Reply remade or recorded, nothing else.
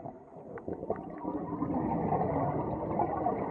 recorded